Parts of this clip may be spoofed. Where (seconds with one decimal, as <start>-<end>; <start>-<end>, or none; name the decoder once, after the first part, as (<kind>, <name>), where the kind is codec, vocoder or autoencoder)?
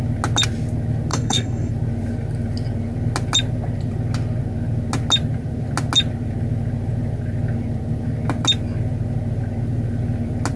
1.1-1.7 (codec, SNAC)